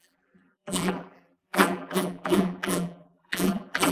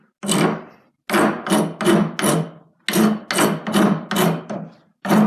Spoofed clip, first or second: first